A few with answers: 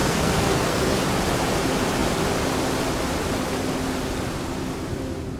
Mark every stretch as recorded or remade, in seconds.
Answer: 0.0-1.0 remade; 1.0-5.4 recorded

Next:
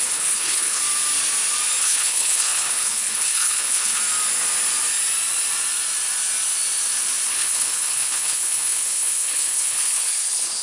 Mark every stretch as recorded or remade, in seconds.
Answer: 0.0-0.8 remade; 0.8-1.8 recorded; 1.8-4.0 remade; 4.0-7.3 recorded; 7.3-10.6 remade

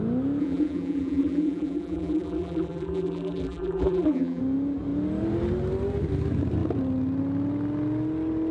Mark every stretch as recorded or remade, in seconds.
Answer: 0.0-0.4 recorded; 0.4-4.4 remade; 4.4-8.5 recorded

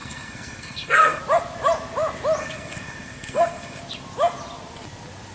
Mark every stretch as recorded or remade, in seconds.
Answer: 0.0-1.2 remade; 1.2-2.4 recorded; 2.4-3.8 remade; 3.8-5.3 recorded

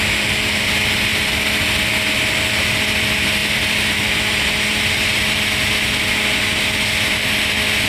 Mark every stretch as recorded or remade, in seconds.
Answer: 0.0-7.9 recorded

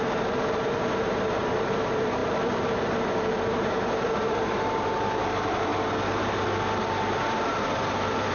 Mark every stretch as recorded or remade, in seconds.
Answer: 0.0-5.7 remade; 5.7-6.8 recorded; 6.8-8.3 remade

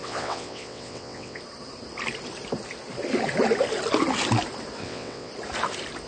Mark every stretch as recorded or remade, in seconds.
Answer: 0.0-1.4 remade; 1.4-4.8 recorded; 4.8-5.3 remade; 5.3-6.1 recorded

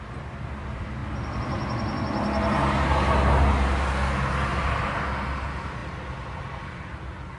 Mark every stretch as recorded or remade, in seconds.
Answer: 0.0-7.4 recorded